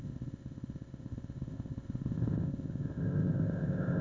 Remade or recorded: remade